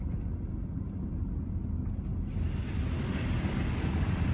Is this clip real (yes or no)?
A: yes